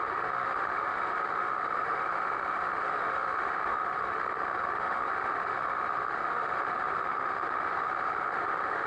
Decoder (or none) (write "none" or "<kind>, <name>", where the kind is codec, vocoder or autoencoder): autoencoder, DAC-VAE